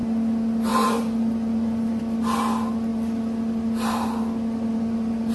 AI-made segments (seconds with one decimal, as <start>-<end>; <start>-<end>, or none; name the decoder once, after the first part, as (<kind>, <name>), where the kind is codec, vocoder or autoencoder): 0.7-2.0 (vocoder, BigVGAN v2); 2.9-5.3